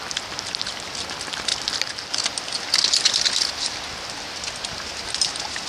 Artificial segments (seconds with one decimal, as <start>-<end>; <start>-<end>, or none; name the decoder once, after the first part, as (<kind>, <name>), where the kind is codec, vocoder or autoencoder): none